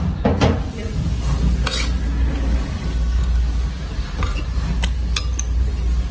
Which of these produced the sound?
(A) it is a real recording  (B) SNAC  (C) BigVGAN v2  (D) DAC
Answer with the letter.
A